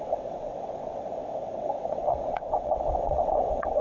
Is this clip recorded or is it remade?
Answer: remade